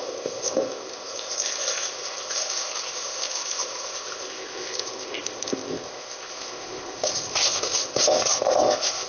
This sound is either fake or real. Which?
fake